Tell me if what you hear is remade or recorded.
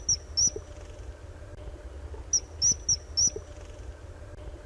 recorded